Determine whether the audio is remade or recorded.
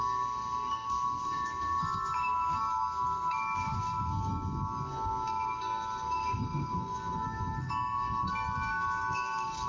remade